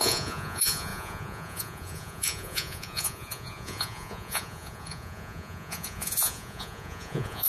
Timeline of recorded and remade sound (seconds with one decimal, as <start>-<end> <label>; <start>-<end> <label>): 0.0-7.5 remade